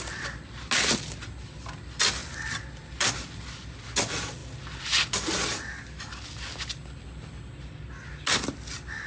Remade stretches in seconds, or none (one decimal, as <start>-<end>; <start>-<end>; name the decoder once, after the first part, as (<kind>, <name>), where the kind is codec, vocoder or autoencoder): none